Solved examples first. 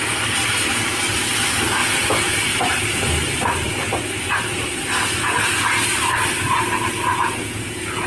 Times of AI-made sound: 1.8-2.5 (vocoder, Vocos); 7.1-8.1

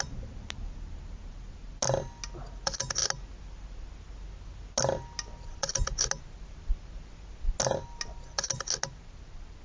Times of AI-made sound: none

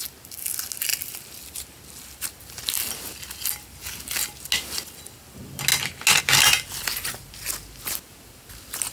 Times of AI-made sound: none

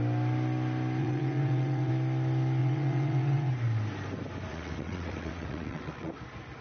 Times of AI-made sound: 1.0-1.9 (vocoder, WaveNeXt); 2.6-3.5; 4.5-6.1